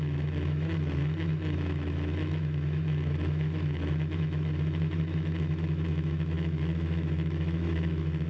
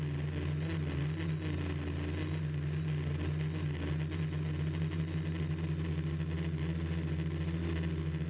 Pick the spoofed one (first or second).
first